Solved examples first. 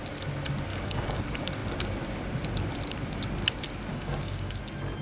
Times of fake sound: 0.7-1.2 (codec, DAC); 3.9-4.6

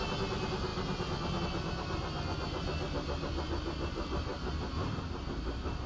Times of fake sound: none

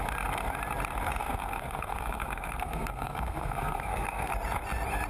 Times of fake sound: 1.2-4.3 (codec, SNAC)

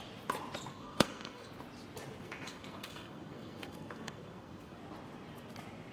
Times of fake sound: 0.7-1.5 (codec, SNAC); 2.2-4.8

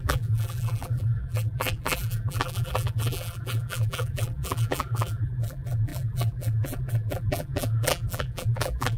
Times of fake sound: 0.0-9.0 (vocoder, BigVGAN v2)

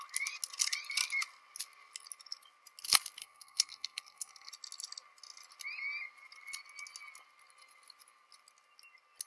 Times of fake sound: 3.2-4.5 (codec, SNAC)

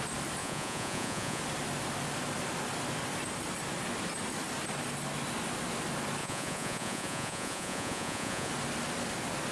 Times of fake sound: 0.4-1.4 (vocoder, Vocos); 6.2-8.5

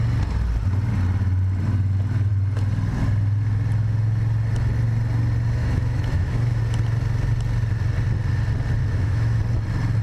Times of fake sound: 5.6-6.6 (autoencoder, DAC-VAE); 8.8-9.4